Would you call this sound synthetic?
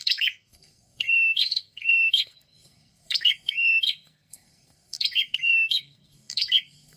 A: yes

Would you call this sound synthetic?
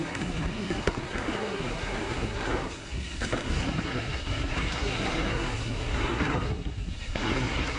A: yes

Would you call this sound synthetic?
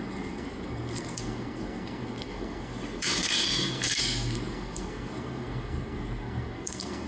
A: yes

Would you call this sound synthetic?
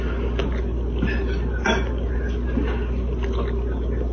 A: no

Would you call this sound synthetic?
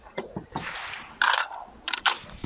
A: no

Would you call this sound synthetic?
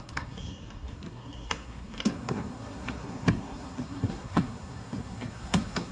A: yes